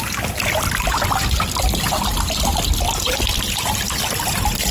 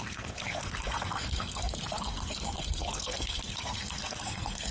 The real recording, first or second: first